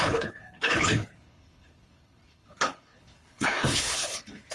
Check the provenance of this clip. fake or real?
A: fake